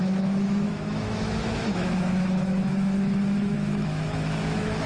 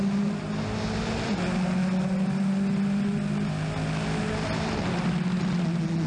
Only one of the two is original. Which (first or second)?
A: second